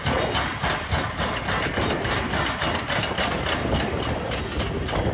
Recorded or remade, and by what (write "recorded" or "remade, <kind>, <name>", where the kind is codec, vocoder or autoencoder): recorded